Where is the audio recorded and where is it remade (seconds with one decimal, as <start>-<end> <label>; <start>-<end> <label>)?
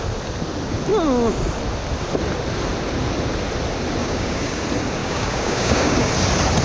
0.0-4.0 recorded; 4.0-4.6 remade; 4.6-5.0 recorded; 5.0-6.1 remade; 6.1-6.6 recorded